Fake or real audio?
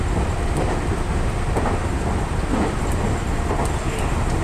real